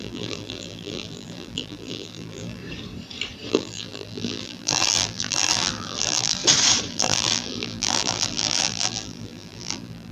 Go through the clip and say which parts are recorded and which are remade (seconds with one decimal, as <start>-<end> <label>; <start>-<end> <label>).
0.0-2.6 remade; 2.6-3.5 recorded; 3.5-6.4 remade; 6.4-6.9 recorded; 6.9-10.1 remade